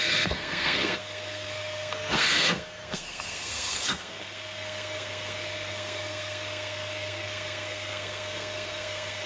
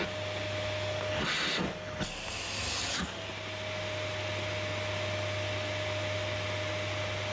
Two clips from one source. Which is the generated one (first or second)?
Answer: first